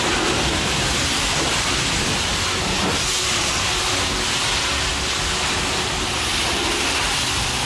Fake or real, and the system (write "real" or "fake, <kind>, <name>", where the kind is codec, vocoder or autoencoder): real